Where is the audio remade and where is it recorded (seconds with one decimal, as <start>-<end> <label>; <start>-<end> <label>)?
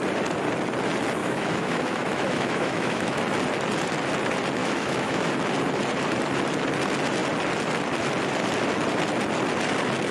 0.0-1.2 recorded; 1.2-3.2 remade; 3.2-4.6 recorded; 4.6-5.3 remade; 5.3-10.1 recorded